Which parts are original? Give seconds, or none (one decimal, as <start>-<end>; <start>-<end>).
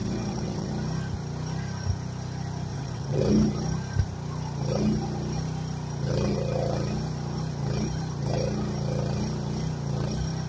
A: 0.7-2.7; 3.2-10.5